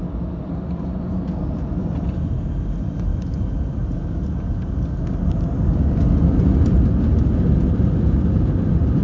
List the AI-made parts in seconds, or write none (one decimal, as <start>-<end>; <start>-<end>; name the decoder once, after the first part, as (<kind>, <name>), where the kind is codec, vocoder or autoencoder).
none